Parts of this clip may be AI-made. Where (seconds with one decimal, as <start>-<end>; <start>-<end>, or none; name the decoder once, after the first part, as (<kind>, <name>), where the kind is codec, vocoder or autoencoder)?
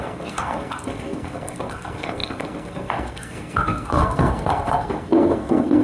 0.0-5.8 (codec, SNAC)